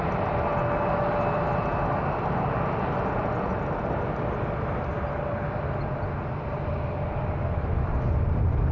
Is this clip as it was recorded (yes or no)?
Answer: yes